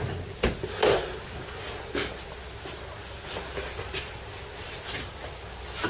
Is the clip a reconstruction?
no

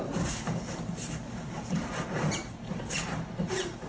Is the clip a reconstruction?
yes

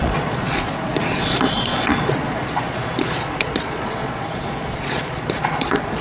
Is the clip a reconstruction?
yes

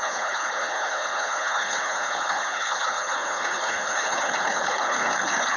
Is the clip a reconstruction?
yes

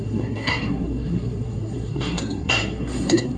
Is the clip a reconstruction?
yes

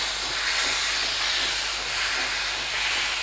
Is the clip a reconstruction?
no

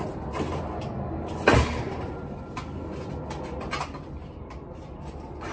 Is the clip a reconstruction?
no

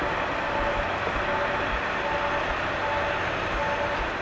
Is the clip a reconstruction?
no